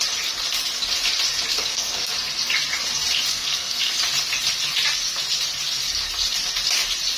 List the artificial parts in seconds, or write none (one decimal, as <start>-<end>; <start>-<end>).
1.5-2.1; 3.3-3.9